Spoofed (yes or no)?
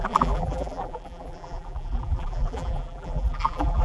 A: yes